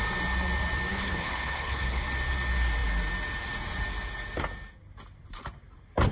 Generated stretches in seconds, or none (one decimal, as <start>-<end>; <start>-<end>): 0.9-2.0